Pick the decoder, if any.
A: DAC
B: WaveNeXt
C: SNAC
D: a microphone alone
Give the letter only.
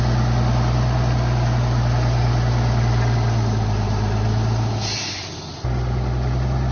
D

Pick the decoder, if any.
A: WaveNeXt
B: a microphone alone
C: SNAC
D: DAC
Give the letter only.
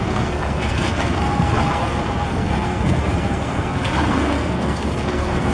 C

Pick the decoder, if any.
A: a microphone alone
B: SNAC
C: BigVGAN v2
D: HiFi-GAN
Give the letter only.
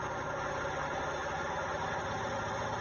A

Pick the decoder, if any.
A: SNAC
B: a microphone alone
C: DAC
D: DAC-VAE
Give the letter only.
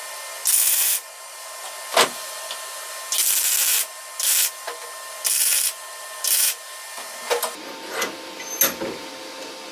B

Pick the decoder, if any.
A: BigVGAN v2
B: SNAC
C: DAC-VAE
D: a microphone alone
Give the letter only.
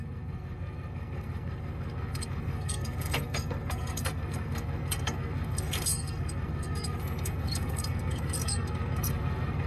B